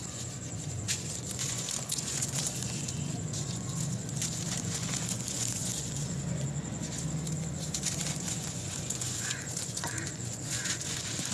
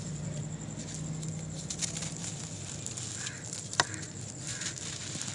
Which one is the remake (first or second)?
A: first